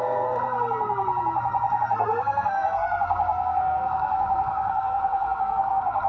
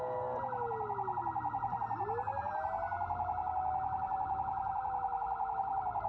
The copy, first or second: first